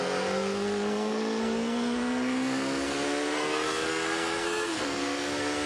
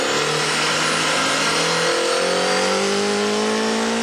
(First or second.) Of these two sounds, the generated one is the first